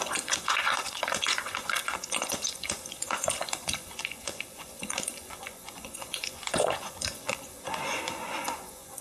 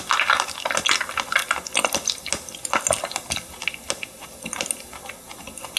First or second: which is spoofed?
first